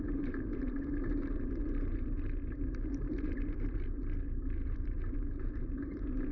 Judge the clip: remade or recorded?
remade